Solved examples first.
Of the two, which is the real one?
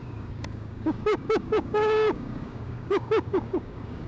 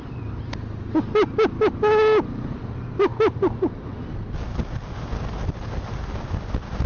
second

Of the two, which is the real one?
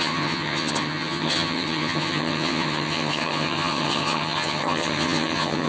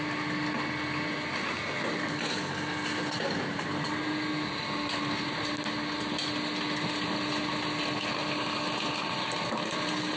second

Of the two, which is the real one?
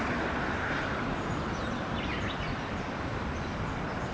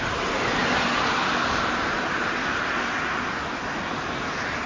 second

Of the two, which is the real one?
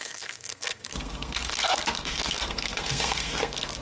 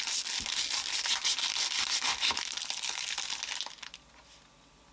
second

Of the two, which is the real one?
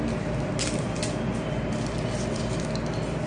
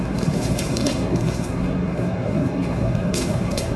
first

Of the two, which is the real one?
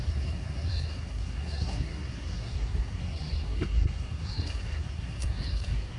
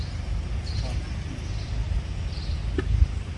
second